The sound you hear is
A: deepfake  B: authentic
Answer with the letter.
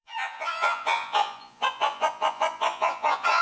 A